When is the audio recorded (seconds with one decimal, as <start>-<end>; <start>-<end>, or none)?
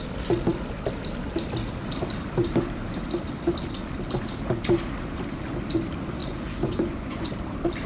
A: 0.0-6.2; 7.3-7.9